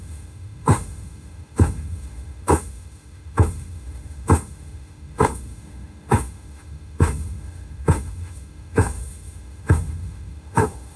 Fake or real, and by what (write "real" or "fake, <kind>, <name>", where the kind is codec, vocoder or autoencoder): fake, autoencoder, DAC-VAE